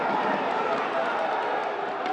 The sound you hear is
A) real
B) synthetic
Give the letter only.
A